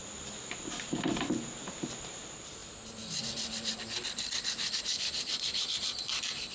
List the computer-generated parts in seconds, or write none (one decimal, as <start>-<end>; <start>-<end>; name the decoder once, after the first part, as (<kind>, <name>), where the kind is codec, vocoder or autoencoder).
none